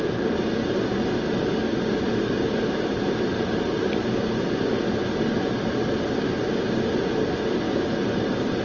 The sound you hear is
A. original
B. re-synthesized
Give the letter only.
A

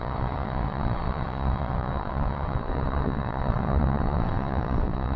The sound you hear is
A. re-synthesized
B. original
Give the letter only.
A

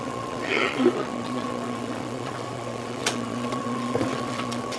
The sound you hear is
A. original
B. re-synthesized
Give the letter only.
B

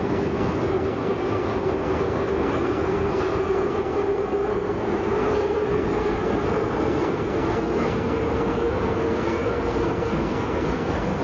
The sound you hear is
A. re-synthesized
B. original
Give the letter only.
A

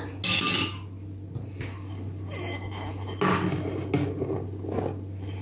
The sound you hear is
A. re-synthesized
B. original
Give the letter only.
B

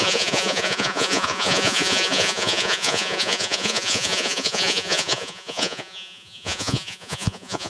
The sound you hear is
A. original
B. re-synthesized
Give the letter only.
B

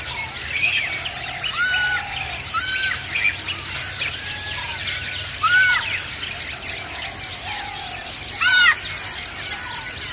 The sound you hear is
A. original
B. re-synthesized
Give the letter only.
A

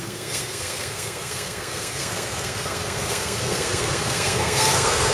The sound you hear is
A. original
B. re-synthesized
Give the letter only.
B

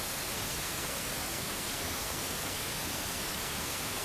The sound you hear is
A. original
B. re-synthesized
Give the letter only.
B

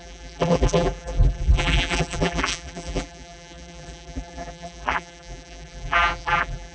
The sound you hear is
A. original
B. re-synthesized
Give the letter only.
B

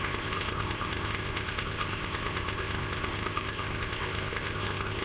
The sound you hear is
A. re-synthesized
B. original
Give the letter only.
A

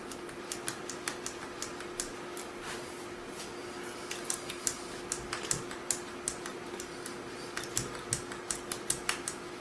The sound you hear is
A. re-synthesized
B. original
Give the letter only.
B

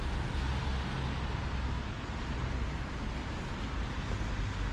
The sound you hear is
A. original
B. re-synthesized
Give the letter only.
A